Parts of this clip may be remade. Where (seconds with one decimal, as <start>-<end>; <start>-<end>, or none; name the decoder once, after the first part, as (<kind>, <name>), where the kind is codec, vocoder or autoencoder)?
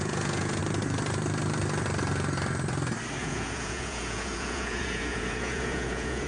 0.0-0.6 (vocoder, Vocos); 3.2-6.3